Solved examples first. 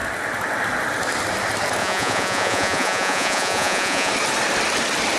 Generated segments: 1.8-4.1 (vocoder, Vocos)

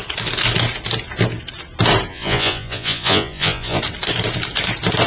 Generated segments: 2.1-3.8 (vocoder, Vocos)

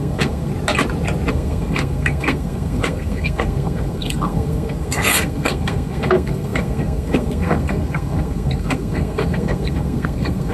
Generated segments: 0.0-0.5 (codec, SNAC); 1.3-10.5

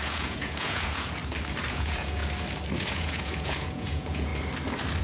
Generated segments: 0.0-1.2 (vocoder, Vocos); 1.7-2.2; 2.9-4.3

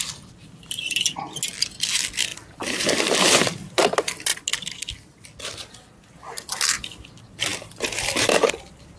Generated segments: 2.3-3.1 (vocoder, BigVGAN v2); 7.5-8.5